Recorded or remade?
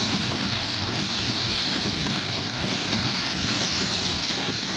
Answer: remade